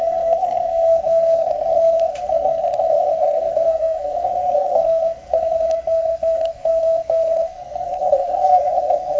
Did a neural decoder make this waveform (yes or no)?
yes